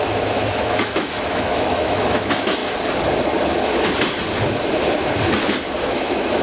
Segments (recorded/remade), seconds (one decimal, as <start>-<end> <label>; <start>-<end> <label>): 0.0-2.6 remade; 2.6-5.8 recorded; 5.8-6.4 remade